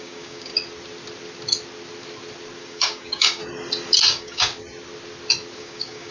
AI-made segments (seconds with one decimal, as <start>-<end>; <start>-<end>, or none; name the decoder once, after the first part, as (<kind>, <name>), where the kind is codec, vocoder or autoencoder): 0.0-0.5 (codec, DAC); 2.6-3.4; 4.0-4.5; 5.6-6.1